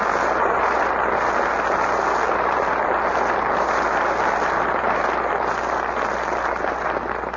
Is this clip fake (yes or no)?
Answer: no